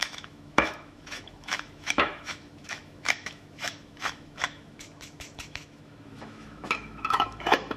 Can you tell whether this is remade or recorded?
remade